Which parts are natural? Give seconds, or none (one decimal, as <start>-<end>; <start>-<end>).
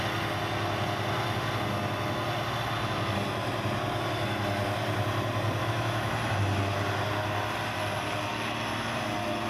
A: 0.0-5.6; 6.1-9.5